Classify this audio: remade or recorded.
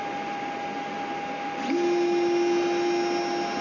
recorded